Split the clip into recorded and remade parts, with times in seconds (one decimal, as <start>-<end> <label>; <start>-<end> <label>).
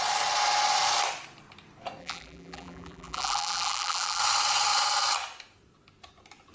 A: 0.0-2.0 recorded; 2.0-4.2 remade; 4.2-6.5 recorded